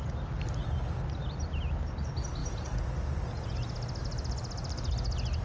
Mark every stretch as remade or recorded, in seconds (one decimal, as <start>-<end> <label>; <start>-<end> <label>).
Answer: 0.0-5.4 recorded